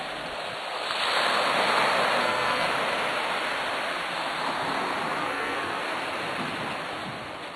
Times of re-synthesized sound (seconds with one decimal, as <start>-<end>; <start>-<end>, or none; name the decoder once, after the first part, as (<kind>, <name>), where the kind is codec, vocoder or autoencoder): 2.2-2.7 (codec, SNAC); 5.2-5.8